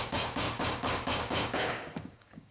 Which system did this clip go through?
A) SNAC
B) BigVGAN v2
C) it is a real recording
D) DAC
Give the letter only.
D